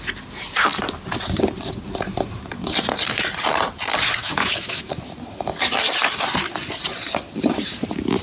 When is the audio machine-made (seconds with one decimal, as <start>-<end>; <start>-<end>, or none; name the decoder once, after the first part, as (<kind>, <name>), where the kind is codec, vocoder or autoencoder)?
4.2-4.9 (autoencoder, DAC-VAE)